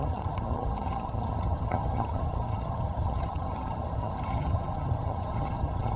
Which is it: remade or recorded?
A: remade